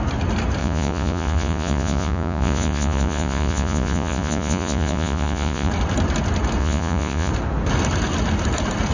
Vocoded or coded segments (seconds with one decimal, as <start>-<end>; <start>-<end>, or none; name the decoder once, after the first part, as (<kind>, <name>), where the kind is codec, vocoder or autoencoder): 0.6-5.7 (vocoder, Vocos); 6.6-7.3